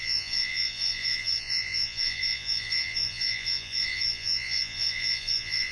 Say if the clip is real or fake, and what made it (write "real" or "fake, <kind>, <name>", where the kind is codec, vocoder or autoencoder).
fake, vocoder, Vocos